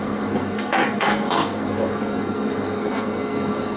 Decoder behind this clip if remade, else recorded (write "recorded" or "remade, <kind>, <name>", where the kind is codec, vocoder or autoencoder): remade, codec, SNAC